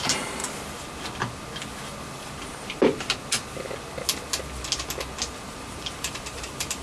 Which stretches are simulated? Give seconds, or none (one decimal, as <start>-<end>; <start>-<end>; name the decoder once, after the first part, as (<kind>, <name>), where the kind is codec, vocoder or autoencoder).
0.0-0.4 (vocoder, BigVGAN v2); 2.4-2.9; 5.3-6.8